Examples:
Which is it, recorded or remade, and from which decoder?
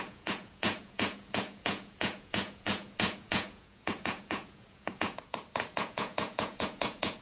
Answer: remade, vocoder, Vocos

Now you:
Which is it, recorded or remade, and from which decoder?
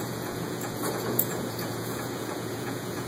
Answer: remade, vocoder, Vocos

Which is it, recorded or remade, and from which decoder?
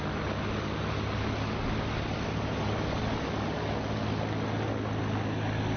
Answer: recorded